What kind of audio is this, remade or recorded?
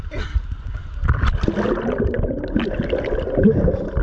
recorded